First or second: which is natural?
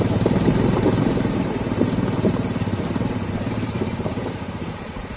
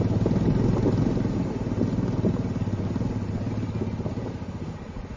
second